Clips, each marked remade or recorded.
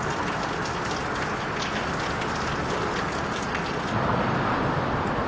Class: recorded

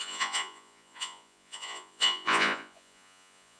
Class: remade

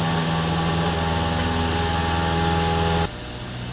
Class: recorded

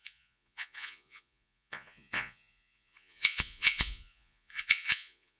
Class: remade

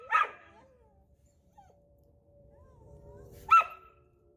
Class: remade